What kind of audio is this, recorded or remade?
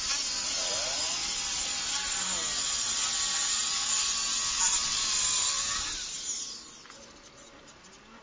recorded